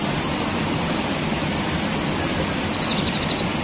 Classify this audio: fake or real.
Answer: real